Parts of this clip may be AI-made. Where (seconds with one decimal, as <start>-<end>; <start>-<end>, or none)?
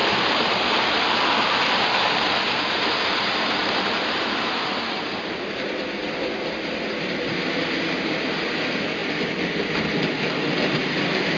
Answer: 0.0-2.2